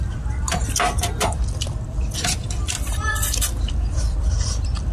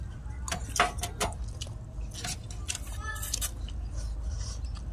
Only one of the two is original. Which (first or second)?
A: second